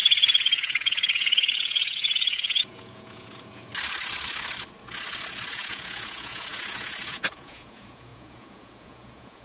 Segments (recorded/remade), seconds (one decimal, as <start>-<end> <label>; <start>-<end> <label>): 0.0-3.7 remade; 3.7-5.5 recorded; 5.5-9.4 remade